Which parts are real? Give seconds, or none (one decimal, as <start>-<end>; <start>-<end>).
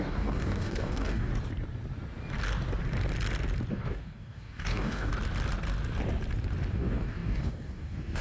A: 1.3-3.7; 5.1-6.7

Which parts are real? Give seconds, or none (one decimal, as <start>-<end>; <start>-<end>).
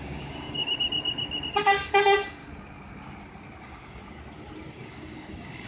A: 0.6-1.5; 2.4-3.6; 4.0-4.7